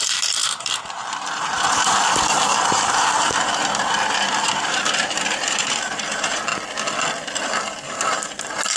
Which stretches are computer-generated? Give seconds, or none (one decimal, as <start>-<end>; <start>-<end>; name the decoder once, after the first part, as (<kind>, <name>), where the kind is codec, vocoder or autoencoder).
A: 0.0-6.5 (vocoder, BigVGAN v2); 7.4-8.8